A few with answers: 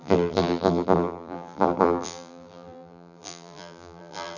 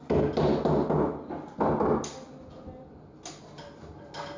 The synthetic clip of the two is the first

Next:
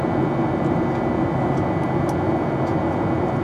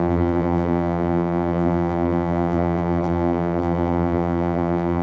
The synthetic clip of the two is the second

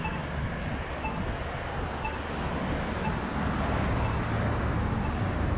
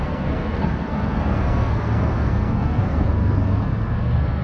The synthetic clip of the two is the second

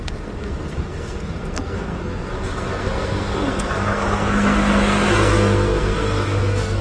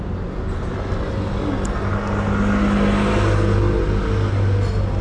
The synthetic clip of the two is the first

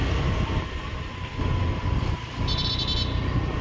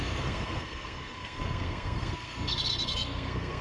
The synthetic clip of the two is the second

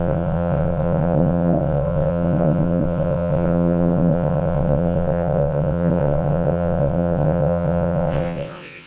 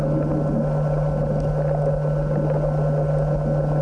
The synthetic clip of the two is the first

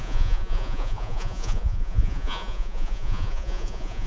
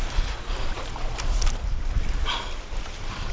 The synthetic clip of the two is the first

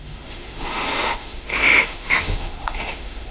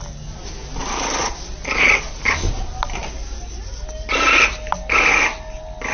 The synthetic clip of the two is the first